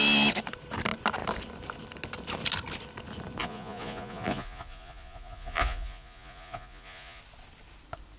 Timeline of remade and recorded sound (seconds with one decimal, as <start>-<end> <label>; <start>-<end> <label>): 0.0-3.4 recorded; 3.4-7.2 remade; 7.2-8.2 recorded